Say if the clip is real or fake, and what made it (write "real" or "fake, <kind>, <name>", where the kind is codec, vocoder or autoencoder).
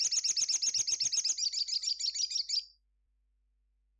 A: real